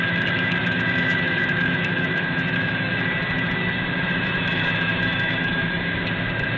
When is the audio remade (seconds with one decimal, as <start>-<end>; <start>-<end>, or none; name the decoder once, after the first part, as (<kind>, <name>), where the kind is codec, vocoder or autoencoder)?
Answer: 0.0-6.6 (autoencoder, DAC-VAE)